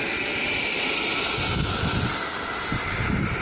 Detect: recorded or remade recorded